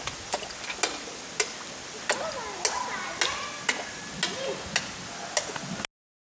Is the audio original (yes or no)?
yes